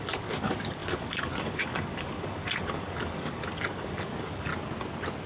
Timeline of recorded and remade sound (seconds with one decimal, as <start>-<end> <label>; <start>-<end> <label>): 0.0-4.5 remade; 4.5-5.3 recorded